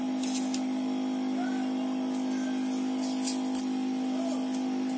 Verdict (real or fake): real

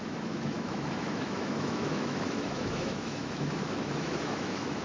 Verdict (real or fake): fake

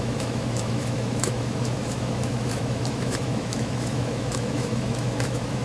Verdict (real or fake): fake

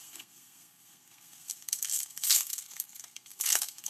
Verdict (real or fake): fake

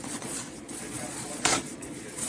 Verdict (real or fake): fake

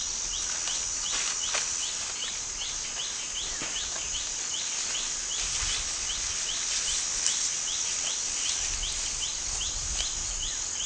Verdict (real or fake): real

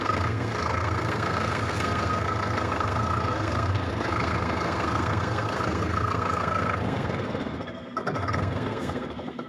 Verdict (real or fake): fake